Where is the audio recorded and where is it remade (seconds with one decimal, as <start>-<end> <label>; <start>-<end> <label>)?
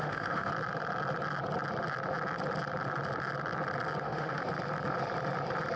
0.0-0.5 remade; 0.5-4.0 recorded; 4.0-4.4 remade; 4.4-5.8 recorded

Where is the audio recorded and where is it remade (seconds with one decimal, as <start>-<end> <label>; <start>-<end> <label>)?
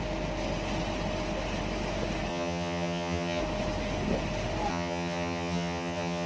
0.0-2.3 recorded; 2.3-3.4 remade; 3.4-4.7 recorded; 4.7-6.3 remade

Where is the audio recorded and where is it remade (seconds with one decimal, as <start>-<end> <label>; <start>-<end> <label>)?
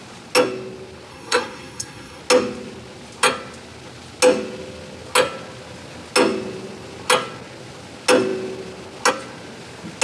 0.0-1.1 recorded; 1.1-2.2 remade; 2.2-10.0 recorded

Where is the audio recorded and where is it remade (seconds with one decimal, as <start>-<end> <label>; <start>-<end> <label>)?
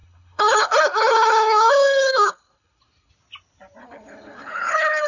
0.0-3.1 remade; 3.1-3.8 recorded; 3.8-5.1 remade